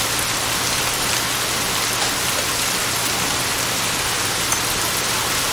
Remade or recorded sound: recorded